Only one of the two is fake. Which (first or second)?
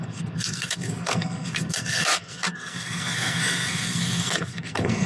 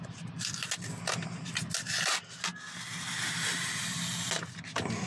first